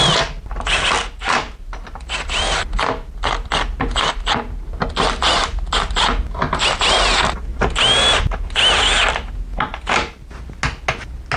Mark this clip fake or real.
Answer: real